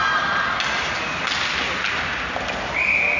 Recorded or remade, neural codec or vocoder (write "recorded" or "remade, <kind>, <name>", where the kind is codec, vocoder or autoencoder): recorded